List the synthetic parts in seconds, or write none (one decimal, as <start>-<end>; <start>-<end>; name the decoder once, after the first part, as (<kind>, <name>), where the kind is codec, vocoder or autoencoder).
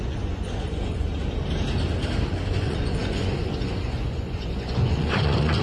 0.0-1.1 (vocoder, Vocos); 2.5-5.6